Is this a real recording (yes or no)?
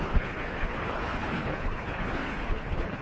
no